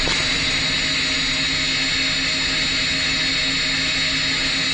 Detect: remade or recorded recorded